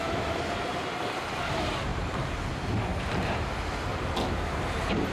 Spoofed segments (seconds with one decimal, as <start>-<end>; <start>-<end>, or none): 1.9-2.5; 2.9-3.5; 3.9-5.1

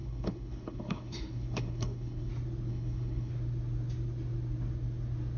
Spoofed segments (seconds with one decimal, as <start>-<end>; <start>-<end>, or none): 0.0-2.3; 2.7-3.3

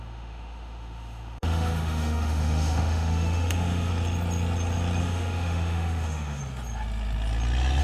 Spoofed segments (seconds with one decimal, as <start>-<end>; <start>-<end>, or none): 0.0-3.9; 5.0-6.4

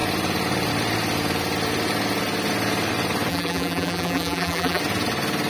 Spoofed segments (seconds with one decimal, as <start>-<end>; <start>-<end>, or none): 3.3-4.8